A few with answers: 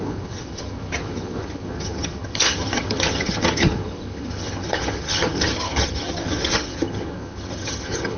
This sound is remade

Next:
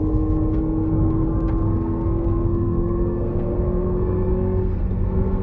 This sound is remade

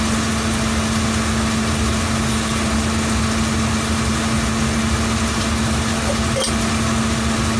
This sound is recorded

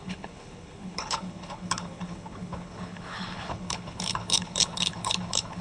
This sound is remade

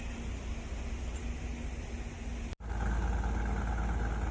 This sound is recorded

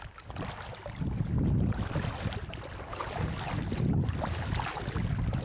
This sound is recorded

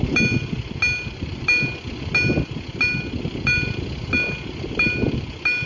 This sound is recorded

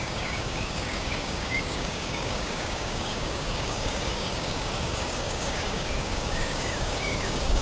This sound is remade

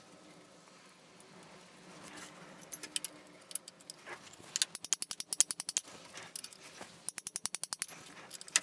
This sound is recorded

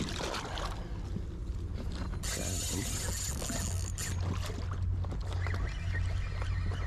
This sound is recorded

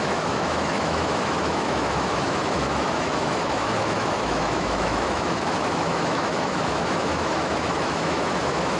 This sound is remade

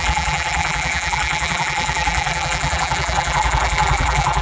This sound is remade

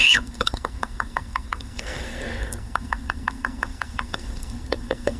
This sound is remade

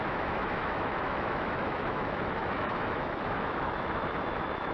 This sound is remade